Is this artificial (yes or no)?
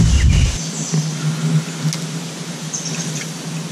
no